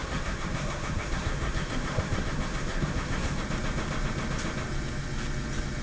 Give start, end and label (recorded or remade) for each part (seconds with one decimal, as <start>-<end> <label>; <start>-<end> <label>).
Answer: 0.0-3.4 remade; 3.4-5.8 recorded

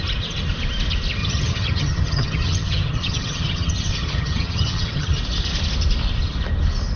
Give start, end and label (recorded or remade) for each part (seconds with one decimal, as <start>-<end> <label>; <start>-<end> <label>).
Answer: 0.0-1.2 recorded; 1.2-5.2 remade; 5.2-7.0 recorded

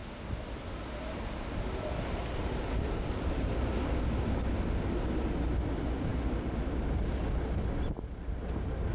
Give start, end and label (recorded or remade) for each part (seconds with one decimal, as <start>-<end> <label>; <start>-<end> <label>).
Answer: 0.0-8.9 recorded

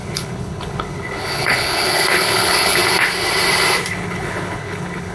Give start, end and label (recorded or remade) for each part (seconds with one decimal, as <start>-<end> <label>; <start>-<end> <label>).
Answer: 0.0-2.8 remade; 2.8-3.9 recorded; 3.9-5.1 remade

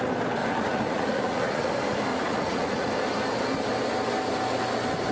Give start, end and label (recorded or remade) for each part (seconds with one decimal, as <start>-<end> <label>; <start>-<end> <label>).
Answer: 0.0-0.4 recorded; 0.4-1.7 remade; 1.7-2.1 recorded; 2.1-2.9 remade; 2.9-5.1 recorded

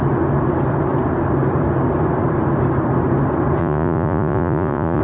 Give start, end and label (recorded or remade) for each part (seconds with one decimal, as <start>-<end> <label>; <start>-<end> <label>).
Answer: 0.0-3.6 recorded; 3.6-5.0 remade